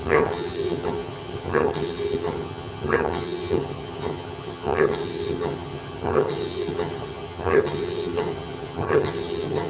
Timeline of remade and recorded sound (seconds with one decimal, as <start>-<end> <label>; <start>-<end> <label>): 0.0-9.7 remade